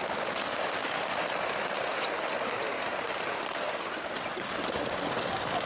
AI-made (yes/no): no